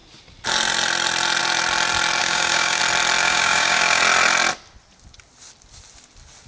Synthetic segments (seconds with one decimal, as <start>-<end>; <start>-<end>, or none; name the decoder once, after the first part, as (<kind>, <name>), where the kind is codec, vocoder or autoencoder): 2.2-2.8 (codec, DAC); 3.2-4.0